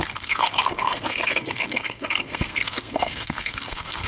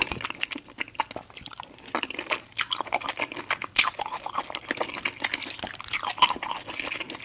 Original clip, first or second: second